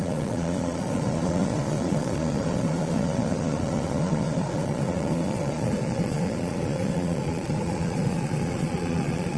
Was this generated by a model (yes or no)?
yes